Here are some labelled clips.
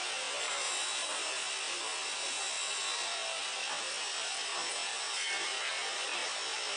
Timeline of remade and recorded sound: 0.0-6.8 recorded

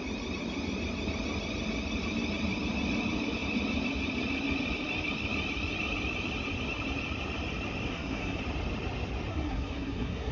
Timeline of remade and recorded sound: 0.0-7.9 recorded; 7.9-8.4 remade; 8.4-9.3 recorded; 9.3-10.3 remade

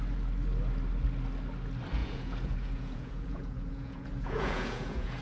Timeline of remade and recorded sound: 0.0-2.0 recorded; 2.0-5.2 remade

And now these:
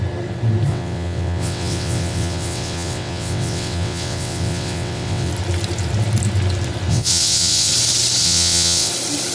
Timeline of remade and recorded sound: 0.0-0.7 recorded; 0.7-5.3 remade; 5.3-6.9 recorded; 6.9-7.7 remade; 7.7-8.2 recorded; 8.2-8.9 remade; 8.9-9.3 recorded

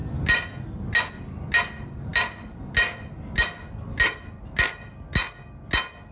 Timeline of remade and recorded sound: 0.0-6.1 recorded